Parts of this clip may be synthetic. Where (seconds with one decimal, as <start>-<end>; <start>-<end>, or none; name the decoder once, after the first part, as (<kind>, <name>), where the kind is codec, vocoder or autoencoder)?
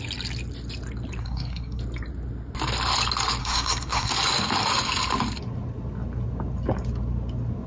1.2-1.8 (codec, SNAC); 3.4-4.1